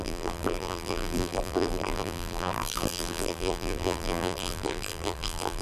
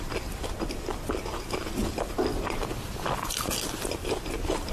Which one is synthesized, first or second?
first